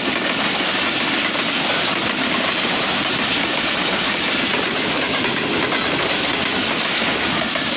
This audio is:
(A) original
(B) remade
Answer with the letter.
A